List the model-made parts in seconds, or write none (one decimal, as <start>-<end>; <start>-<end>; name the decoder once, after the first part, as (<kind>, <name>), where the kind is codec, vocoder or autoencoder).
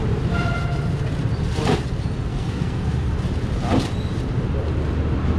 2.3-3.1 (codec, SNAC)